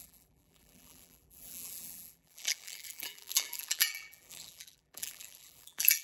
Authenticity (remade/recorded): remade